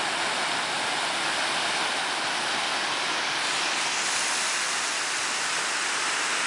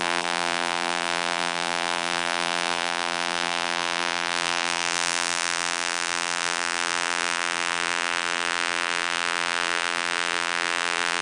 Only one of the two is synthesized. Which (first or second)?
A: second